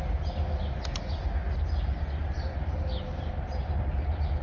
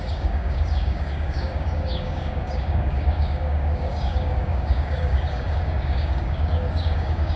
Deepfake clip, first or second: second